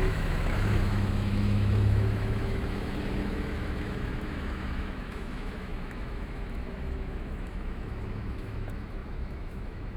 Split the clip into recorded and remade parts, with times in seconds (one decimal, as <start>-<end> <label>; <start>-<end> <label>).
0.0-10.0 remade